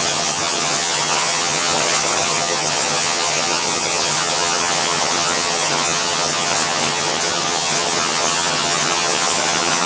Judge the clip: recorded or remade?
remade